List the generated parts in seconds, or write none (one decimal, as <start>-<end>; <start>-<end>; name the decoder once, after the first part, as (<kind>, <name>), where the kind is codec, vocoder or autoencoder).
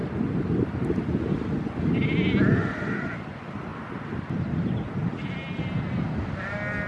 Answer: none